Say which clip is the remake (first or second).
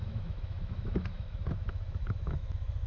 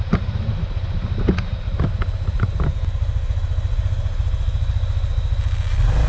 first